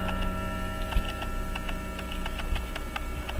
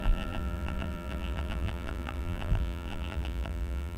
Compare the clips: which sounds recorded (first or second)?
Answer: first